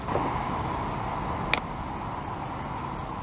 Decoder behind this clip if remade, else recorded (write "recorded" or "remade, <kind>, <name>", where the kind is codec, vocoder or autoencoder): recorded